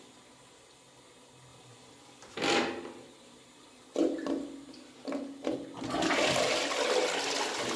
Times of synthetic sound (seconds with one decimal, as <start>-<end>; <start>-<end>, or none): 1.5-5.8